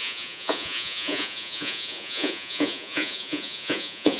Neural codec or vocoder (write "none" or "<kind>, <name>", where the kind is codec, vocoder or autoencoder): vocoder, Vocos